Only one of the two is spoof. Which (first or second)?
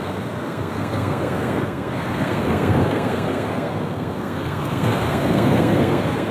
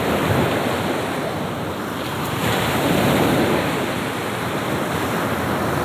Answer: first